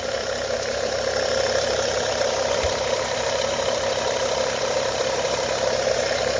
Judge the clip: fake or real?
fake